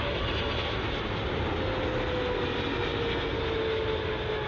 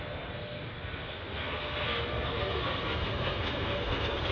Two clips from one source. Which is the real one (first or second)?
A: first